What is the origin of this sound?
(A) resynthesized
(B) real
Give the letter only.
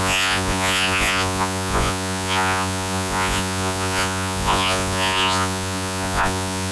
A